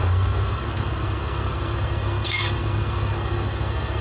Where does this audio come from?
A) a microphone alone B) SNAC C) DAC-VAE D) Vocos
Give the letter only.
B